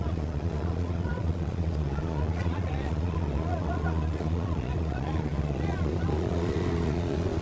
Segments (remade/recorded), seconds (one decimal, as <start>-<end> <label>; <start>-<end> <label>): 0.0-7.4 remade